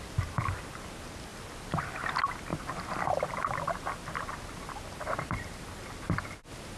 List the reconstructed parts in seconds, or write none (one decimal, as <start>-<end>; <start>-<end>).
none